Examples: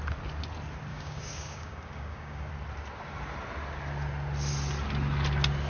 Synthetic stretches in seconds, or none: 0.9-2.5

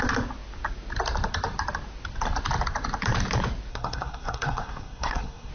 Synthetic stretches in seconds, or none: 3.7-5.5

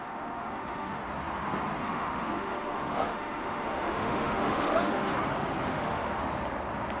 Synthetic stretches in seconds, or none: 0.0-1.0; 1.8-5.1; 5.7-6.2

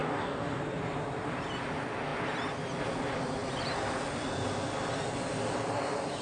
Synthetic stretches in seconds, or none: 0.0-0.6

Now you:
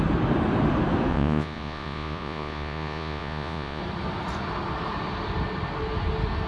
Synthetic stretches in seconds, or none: 1.1-3.8